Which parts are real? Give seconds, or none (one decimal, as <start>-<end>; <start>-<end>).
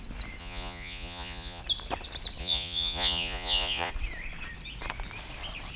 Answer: 0.0-0.4; 1.6-2.4; 3.9-5.8